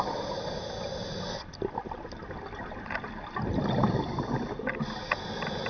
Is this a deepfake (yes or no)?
no